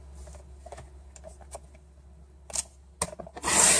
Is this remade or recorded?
recorded